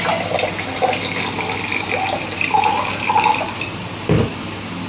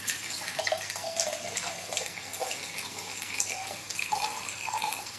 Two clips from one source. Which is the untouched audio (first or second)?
first